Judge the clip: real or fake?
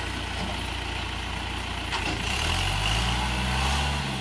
real